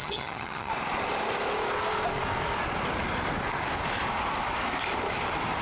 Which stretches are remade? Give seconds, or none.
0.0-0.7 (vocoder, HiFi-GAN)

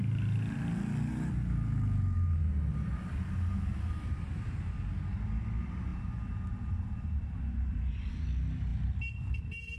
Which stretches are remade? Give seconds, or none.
8.7-9.8 (vocoder, BigVGAN v2)

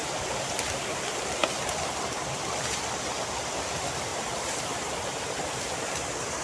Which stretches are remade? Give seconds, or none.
0.0-0.5 (vocoder, BigVGAN v2); 4.1-4.9

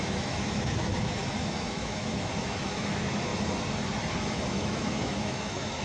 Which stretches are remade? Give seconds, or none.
0.0-3.3 (autoencoder, DAC-VAE); 4.5-5.8

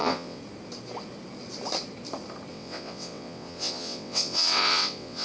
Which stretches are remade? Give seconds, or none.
0.0-0.4 (vocoder, WaveNeXt); 2.5-5.2

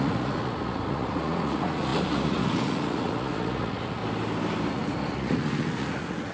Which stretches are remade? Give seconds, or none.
0.0-4.0 (vocoder, Vocos); 4.7-6.3

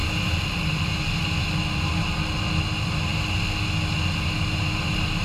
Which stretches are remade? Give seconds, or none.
none